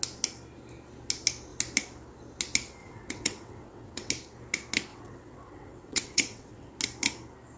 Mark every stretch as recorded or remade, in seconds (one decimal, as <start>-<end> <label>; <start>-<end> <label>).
0.0-2.8 recorded; 2.8-4.1 remade; 4.1-4.9 recorded; 4.9-6.7 remade; 6.7-7.6 recorded